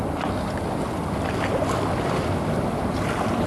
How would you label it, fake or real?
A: real